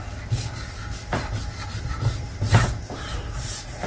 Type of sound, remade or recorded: recorded